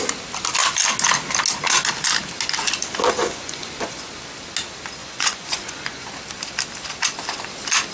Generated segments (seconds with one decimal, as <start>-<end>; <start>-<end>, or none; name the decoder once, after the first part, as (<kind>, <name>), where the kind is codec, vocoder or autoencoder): 3.2-4.1 (vocoder, Vocos); 5.0-6.1